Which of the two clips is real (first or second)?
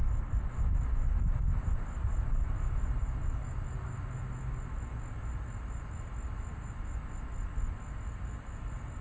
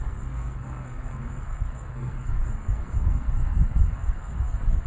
first